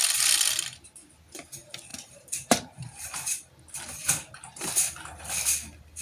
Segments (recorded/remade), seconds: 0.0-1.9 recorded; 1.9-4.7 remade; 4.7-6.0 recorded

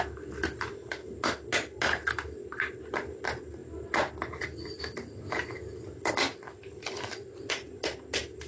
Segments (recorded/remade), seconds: 0.0-3.6 recorded; 3.6-7.4 remade; 7.4-8.5 recorded

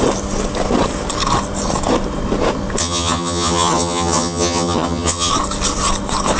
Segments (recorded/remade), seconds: 0.0-2.8 recorded; 2.8-5.3 remade; 5.3-6.4 recorded

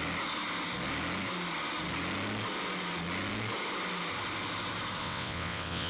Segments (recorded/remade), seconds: 0.0-5.0 recorded; 5.0-5.9 remade

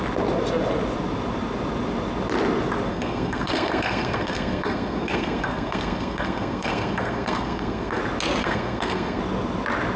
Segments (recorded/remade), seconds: 0.0-2.9 recorded; 2.9-8.0 remade; 8.0-8.4 recorded; 8.4-9.2 remade; 9.2-10.0 recorded

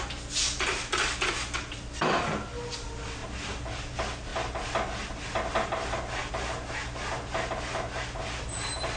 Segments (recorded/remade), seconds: 0.0-9.0 recorded

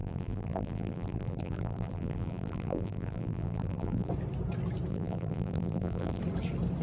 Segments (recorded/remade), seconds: 0.0-4.1 remade; 4.1-4.9 recorded; 4.9-6.2 remade; 6.2-6.8 recorded